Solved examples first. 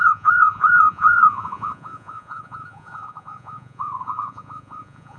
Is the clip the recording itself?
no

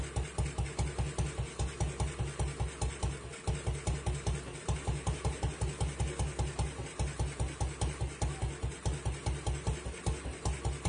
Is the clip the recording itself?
yes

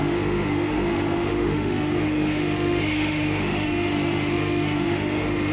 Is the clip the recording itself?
no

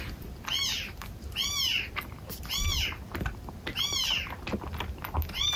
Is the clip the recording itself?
yes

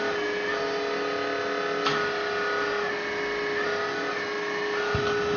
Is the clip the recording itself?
yes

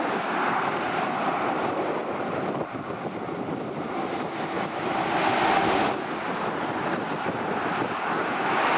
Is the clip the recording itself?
no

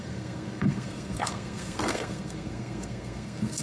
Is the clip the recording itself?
no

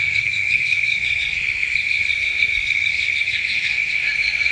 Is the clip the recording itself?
no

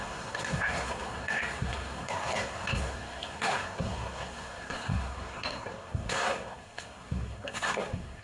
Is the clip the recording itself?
no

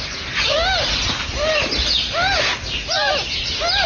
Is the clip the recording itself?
yes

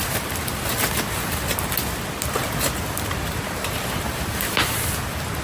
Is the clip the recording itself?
yes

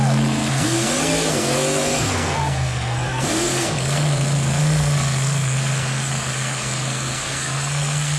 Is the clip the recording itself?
no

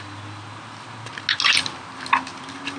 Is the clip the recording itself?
yes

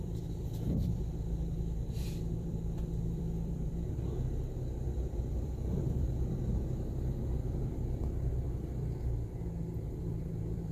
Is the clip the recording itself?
no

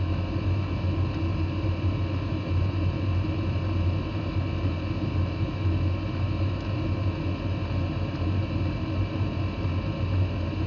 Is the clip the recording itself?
yes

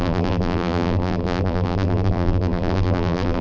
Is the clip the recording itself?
no